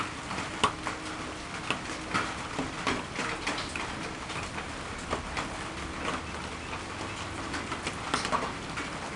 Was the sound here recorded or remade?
recorded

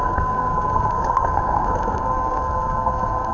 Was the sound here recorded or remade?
remade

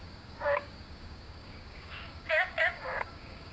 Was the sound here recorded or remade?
remade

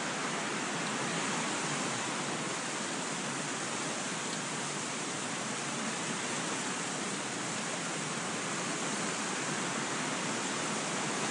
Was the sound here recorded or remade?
recorded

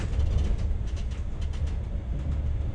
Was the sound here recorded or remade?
recorded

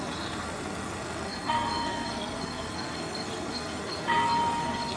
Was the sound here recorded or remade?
remade